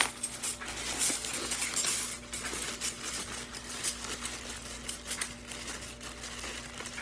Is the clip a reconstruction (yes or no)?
no